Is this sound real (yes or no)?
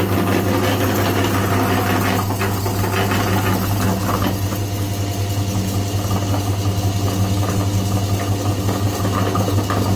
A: yes